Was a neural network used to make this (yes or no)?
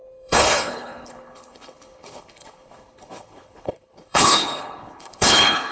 yes